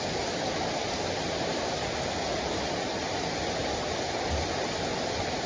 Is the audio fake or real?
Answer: real